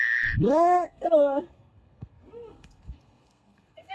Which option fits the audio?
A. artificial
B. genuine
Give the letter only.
A